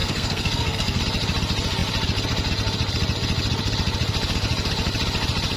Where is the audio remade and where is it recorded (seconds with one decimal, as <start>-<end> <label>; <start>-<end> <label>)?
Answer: 0.0-1.0 remade; 1.0-5.6 recorded